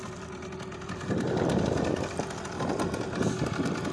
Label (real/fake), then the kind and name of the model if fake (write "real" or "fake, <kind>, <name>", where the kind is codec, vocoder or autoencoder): real